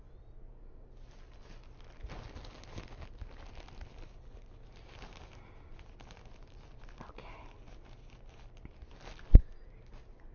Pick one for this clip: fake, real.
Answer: real